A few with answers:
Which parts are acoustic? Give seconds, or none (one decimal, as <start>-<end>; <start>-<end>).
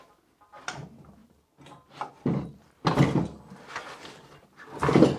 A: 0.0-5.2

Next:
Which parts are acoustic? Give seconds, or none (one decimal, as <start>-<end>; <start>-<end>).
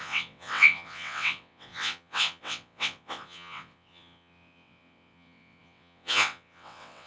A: none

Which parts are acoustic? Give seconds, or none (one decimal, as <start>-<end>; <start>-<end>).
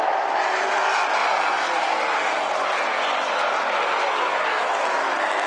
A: 0.0-4.5; 5.1-5.5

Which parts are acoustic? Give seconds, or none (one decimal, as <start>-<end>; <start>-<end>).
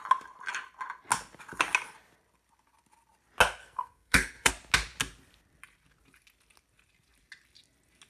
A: 0.0-3.6; 4.5-8.1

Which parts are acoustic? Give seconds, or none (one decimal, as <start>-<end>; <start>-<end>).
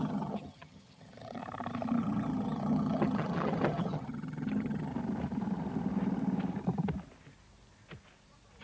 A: 1.4-2.0; 4.9-8.6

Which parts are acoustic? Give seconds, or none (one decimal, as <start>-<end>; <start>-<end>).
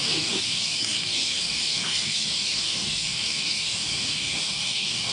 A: none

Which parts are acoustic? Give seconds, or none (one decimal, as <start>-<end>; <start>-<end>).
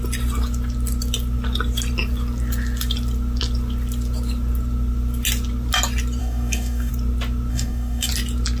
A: 0.0-6.2; 6.9-7.5; 8.1-8.6